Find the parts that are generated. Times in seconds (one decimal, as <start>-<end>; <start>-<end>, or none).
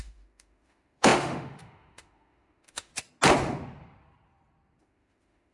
0.0-2.9; 4.8-5.5